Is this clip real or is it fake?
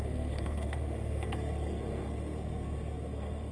fake